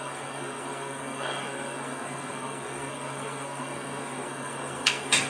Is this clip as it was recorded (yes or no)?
no